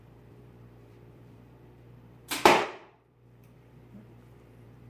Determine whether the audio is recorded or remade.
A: remade